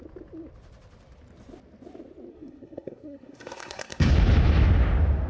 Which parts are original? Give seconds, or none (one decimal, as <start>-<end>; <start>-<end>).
0.0-2.3; 4.1-5.3